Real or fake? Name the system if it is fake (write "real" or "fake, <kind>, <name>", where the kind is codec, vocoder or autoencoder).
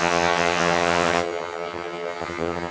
fake, vocoder, HiFi-GAN